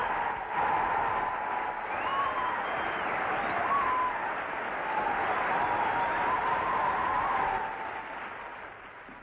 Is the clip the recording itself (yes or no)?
yes